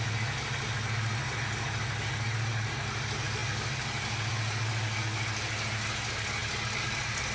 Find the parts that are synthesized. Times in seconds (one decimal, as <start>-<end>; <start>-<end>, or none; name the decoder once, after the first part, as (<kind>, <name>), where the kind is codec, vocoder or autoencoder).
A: none